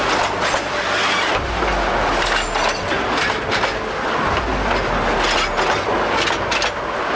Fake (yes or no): no